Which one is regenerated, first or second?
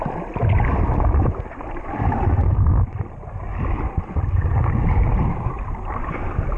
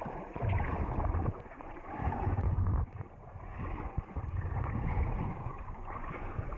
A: second